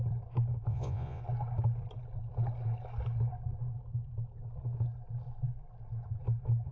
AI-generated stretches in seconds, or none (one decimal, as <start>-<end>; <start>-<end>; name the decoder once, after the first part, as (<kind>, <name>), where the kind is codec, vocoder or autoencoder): 0.7-1.2 (vocoder, Vocos)